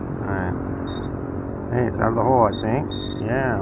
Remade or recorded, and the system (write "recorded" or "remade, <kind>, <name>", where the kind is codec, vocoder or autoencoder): recorded